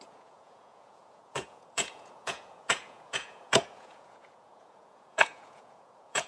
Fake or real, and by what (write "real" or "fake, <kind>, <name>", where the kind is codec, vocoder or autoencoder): fake, vocoder, Vocos